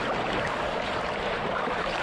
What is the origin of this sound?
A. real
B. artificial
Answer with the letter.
B